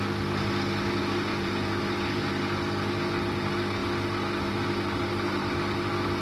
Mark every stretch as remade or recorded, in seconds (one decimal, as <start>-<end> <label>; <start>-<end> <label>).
0.0-1.3 recorded; 1.3-1.8 remade; 1.8-6.2 recorded